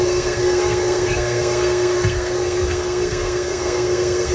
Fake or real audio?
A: fake